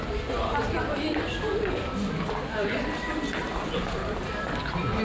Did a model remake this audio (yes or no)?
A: yes